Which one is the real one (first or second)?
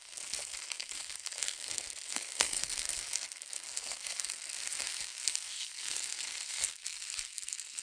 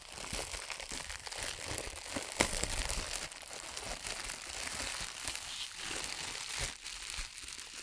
second